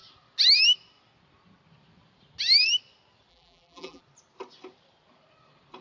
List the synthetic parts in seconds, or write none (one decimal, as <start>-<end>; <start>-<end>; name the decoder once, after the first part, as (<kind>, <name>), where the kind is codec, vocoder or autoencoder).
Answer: 3.3-4.0 (vocoder, BigVGAN v2)